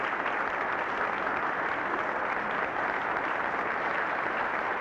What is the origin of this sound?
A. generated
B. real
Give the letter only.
B